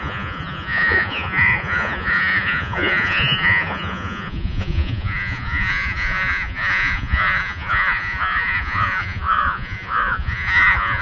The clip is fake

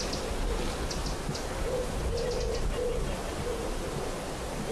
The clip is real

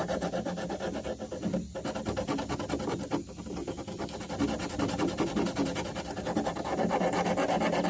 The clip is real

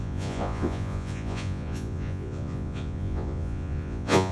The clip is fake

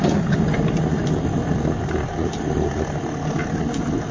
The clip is real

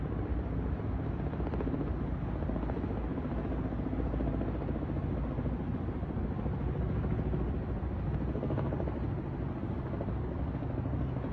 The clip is real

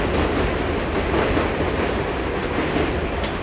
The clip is real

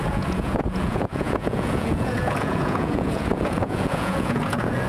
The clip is fake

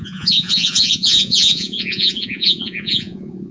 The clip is fake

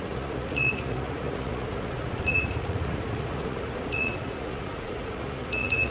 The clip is fake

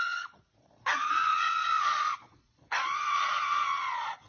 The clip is fake